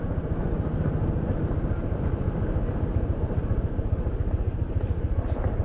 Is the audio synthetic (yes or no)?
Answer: no